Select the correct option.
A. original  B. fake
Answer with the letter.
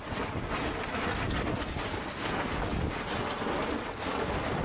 A